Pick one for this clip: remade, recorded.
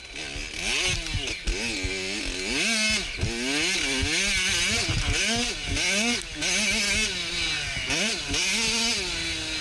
recorded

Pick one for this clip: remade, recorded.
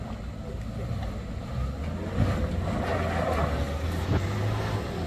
recorded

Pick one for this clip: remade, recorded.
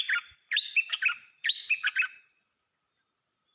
recorded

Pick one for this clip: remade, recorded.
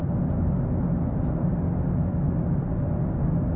recorded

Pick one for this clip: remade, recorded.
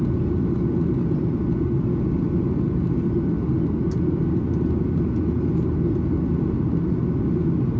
recorded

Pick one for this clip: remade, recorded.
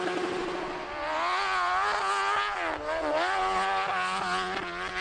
recorded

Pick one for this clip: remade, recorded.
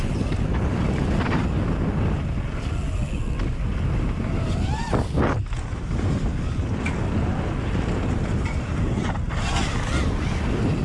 recorded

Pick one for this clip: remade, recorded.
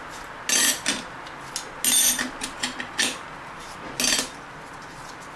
recorded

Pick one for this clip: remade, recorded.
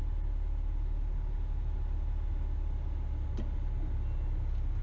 recorded